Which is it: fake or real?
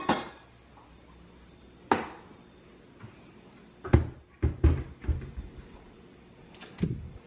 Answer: real